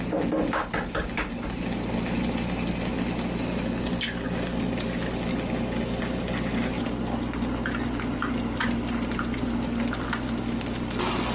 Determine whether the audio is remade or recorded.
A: recorded